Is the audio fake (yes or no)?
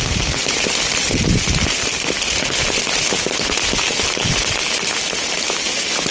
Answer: no